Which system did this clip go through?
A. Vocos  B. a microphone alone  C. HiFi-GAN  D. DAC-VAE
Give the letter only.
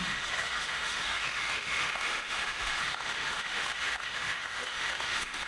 D